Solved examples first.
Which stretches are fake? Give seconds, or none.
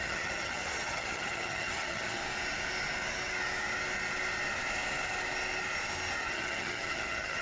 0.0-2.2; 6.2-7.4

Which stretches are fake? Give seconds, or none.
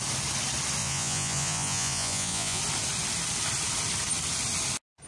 0.8-2.6